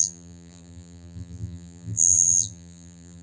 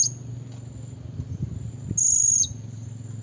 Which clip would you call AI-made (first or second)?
first